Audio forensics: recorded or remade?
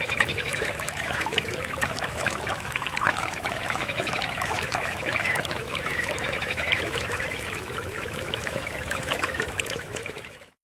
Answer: remade